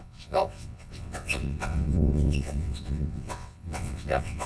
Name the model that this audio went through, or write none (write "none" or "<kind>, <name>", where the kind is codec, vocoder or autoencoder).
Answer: vocoder, WaveNeXt